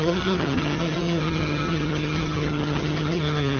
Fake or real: fake